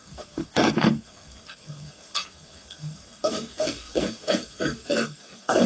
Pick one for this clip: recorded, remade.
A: remade